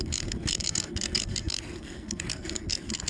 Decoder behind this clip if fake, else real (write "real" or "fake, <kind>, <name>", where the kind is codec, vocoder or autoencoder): fake, codec, SNAC